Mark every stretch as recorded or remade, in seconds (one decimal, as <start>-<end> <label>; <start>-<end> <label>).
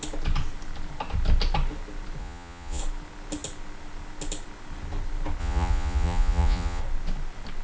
0.0-2.2 recorded; 2.2-2.8 remade; 2.8-5.4 recorded; 5.4-6.8 remade; 6.8-7.6 recorded